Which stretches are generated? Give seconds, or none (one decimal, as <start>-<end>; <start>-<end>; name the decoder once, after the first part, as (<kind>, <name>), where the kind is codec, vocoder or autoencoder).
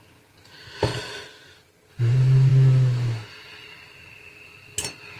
0.9-1.9 (vocoder, BigVGAN v2)